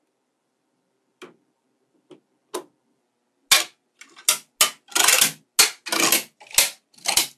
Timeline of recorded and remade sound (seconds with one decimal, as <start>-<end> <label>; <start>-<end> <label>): 0.0-7.4 recorded